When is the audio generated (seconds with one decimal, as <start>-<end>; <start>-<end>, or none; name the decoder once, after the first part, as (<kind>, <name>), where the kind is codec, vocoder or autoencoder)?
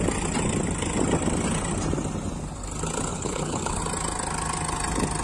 3.1-3.8 (codec, HILCodec)